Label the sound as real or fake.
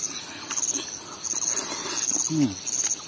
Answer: real